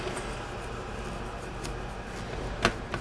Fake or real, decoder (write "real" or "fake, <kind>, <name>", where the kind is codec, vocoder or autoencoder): real